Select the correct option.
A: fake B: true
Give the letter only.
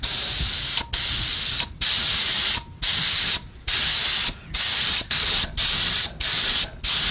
B